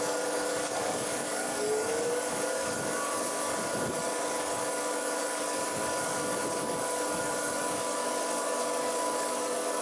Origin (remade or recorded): remade